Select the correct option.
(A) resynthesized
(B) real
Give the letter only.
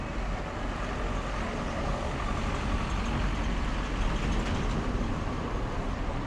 B